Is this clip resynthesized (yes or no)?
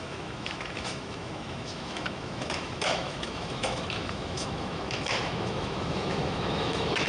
yes